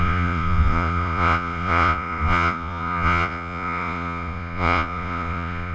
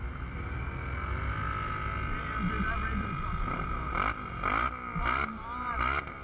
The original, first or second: second